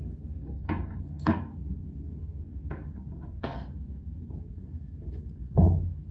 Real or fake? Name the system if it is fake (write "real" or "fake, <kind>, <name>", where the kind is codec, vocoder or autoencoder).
fake, codec, SNAC